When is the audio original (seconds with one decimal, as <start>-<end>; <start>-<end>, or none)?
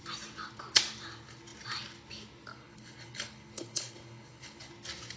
0.0-2.5; 4.7-5.2